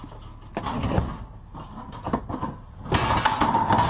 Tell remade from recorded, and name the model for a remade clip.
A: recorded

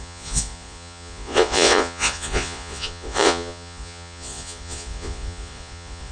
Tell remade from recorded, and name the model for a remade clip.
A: remade, vocoder, Vocos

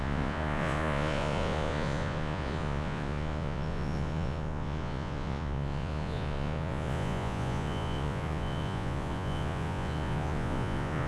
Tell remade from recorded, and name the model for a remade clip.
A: remade, vocoder, Vocos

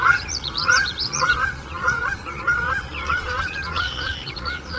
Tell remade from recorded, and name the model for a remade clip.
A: remade, vocoder, Vocos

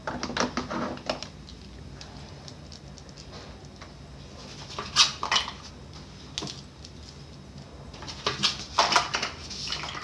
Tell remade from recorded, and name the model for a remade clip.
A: recorded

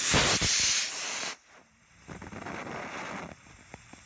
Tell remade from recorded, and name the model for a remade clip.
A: recorded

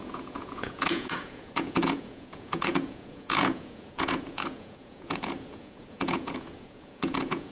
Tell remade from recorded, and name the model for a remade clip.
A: remade, vocoder, Vocos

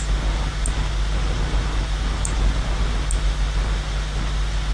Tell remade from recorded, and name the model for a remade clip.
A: recorded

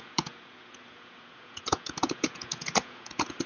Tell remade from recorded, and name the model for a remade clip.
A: remade, vocoder, Vocos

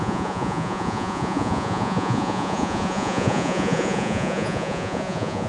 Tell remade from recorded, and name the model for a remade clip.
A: remade, vocoder, Vocos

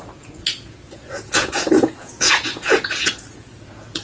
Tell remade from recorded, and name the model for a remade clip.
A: remade, vocoder, Vocos